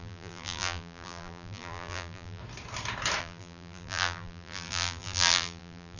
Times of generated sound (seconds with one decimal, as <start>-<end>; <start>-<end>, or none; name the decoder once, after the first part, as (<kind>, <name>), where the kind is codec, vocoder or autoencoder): 0.0-2.4 (vocoder, BigVGAN v2); 3.2-6.0